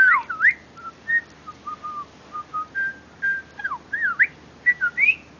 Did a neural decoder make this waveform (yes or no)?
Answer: no